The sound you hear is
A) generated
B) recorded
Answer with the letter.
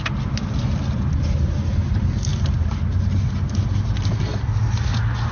B